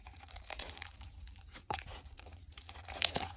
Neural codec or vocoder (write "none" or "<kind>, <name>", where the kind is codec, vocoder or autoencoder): vocoder, Vocos